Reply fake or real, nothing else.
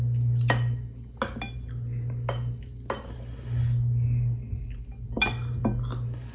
real